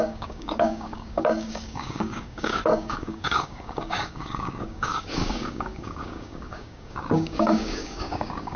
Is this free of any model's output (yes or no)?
no